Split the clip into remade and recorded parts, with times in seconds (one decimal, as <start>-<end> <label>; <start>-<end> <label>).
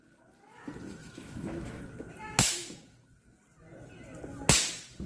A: 0.0-1.0 recorded; 1.0-1.8 remade; 1.8-2.2 recorded; 2.2-2.8 remade; 2.8-5.1 recorded